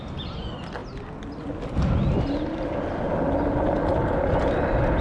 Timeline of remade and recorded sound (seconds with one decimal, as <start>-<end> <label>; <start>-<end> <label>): 0.0-5.0 recorded